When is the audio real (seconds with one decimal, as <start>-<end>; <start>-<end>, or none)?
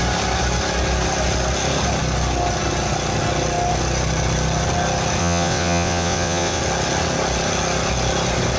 0.0-5.2; 6.6-8.6